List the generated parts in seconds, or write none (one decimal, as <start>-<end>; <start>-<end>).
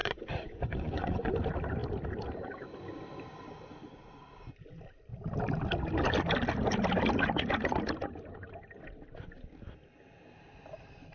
0.0-1.3